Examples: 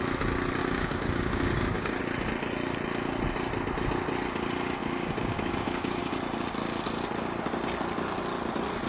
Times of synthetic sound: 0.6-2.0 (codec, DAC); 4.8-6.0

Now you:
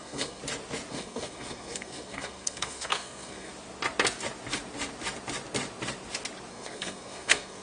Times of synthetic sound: 0.0-0.4 (codec, SNAC); 0.9-3.5; 6.5-7.6